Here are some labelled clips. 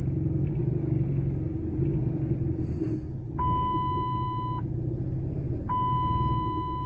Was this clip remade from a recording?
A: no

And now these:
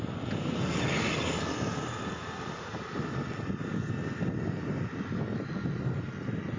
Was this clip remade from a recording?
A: no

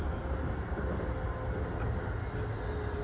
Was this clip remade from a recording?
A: no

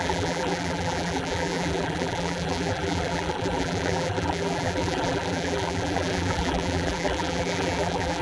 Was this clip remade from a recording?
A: yes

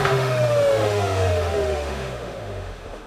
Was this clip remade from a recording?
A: yes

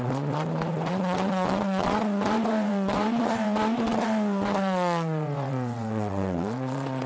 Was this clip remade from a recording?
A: yes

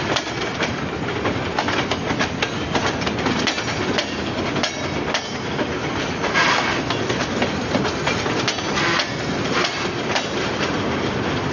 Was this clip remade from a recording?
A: no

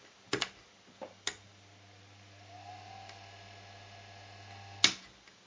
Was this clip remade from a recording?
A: no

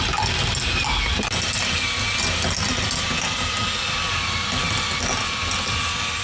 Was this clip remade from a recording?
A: no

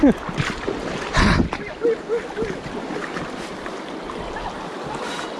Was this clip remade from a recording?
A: no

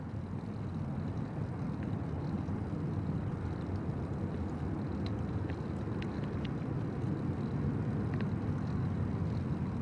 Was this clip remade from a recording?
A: no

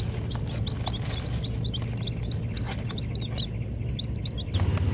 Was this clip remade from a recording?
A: no